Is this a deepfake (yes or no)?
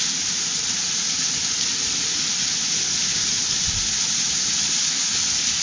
no